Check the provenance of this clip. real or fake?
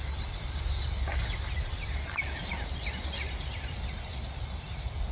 real